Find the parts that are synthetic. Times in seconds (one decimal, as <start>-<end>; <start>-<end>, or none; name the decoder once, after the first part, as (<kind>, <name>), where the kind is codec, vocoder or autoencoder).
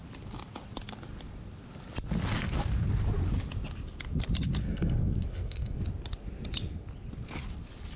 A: 4.6-5.8 (codec, SNAC)